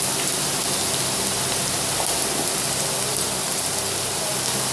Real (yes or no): yes